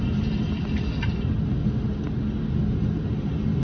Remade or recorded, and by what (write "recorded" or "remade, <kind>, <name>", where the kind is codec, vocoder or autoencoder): recorded